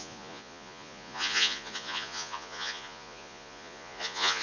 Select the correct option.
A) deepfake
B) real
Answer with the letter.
A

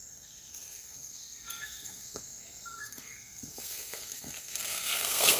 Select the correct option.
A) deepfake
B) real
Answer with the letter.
A